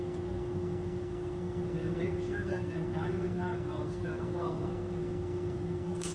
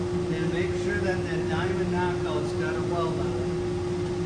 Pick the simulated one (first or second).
first